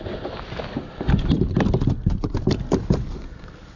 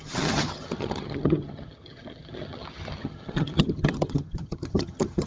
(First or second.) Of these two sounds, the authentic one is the first